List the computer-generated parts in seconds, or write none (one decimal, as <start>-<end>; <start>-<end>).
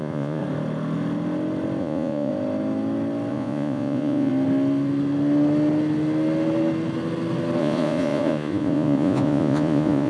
0.0-0.4; 1.8-2.3; 3.3-4.3; 7.6-10.1